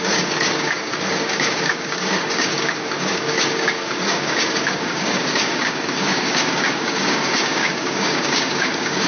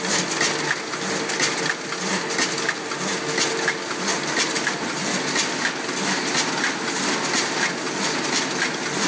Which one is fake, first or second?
first